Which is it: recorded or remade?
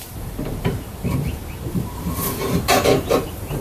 remade